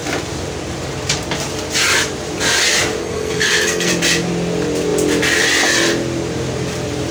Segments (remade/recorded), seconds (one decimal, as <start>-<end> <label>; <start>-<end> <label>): 0.0-3.0 recorded; 3.0-3.9 remade; 3.9-7.1 recorded